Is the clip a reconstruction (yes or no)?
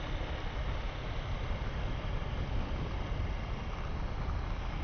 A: no